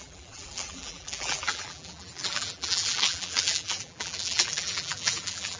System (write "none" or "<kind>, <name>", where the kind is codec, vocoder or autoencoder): vocoder, BigVGAN v2